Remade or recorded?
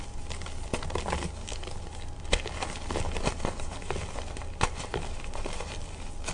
recorded